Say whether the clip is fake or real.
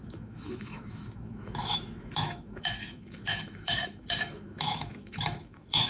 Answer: fake